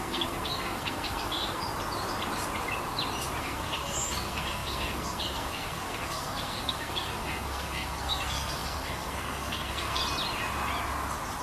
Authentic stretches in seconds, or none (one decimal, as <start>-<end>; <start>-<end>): 1.7-3.4; 10.0-11.4